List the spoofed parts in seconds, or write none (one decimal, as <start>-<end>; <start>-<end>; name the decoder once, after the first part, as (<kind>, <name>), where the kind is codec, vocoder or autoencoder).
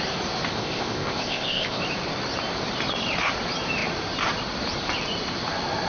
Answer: 0.5-1.8 (codec, ZipCodec)